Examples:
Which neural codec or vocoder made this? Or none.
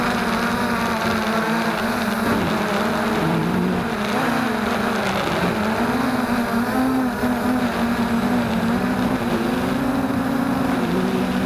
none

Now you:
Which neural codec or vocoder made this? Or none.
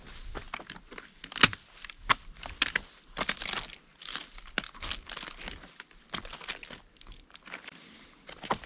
none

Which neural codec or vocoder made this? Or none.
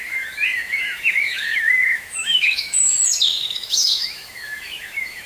autoencoder, DAC-VAE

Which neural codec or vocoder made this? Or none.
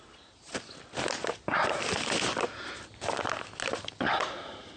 none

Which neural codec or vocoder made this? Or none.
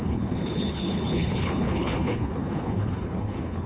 codec, HILCodec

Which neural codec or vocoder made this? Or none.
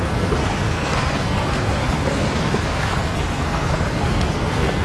codec, SNAC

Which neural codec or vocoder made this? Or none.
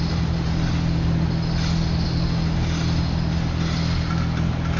none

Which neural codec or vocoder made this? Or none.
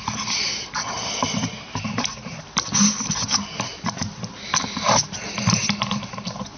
none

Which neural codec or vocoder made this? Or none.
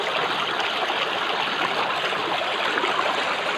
none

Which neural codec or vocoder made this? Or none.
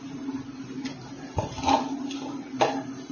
none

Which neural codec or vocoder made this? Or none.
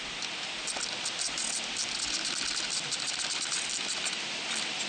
none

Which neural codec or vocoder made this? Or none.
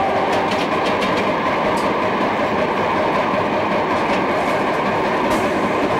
none